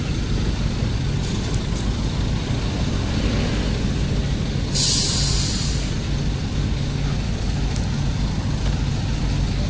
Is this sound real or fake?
real